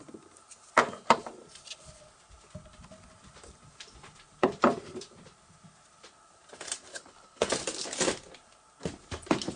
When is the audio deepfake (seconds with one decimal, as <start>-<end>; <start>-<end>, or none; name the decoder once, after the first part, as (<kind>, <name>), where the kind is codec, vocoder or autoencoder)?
6.9-7.5 (codec, HILCodec)